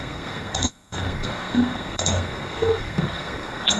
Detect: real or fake fake